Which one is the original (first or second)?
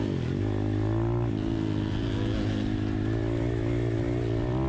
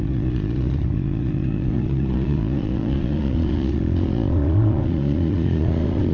first